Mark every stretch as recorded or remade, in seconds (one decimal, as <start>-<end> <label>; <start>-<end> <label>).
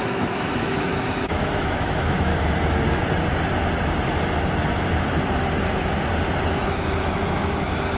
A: 0.0-2.3 remade; 2.3-6.5 recorded; 6.5-8.0 remade